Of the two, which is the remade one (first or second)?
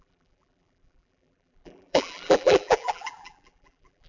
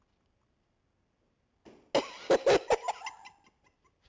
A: first